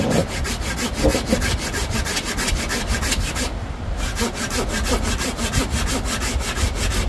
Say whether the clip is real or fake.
real